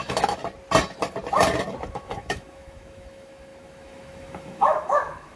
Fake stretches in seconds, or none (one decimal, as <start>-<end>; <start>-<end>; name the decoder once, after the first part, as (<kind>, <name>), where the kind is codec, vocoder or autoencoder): 0.0-0.4 (autoencoder, DAC-VAE); 1.9-5.4